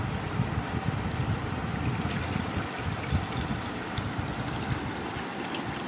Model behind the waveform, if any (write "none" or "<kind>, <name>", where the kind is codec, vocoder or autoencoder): none